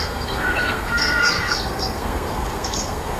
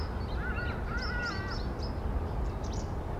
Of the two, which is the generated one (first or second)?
first